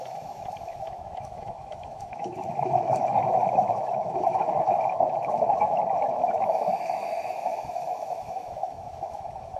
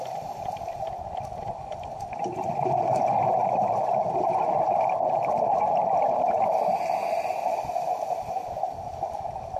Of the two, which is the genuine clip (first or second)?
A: second